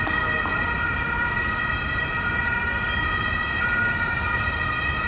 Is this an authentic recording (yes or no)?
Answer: yes